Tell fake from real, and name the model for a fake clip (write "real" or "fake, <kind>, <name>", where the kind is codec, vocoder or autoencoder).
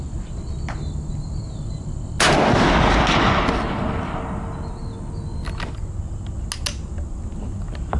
real